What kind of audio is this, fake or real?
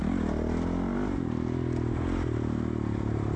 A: real